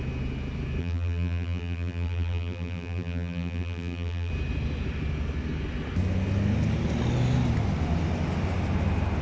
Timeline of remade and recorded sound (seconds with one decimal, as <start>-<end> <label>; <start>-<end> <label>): 0.0-0.8 recorded; 0.8-4.3 remade; 4.3-9.2 recorded